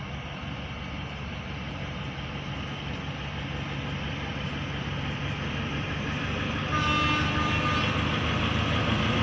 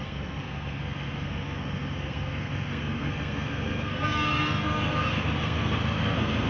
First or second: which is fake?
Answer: second